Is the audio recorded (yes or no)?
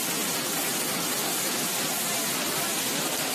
yes